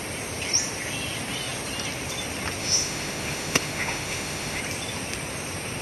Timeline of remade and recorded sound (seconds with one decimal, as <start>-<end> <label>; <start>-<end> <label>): 0.0-2.6 recorded; 2.6-4.6 remade; 4.6-5.8 recorded